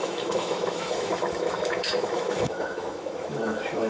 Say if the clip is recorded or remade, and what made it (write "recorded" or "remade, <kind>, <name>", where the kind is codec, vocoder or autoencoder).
remade, autoencoder, DAC-VAE